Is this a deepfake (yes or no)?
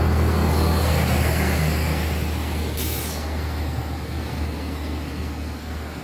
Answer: yes